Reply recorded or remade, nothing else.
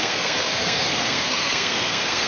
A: remade